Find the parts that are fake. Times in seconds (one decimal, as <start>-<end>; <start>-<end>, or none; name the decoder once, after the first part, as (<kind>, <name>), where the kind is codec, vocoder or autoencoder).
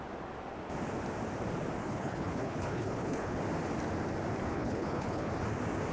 1.8-3.4 (codec, HILCodec); 4.5-5.3